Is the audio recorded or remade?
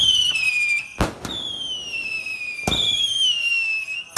recorded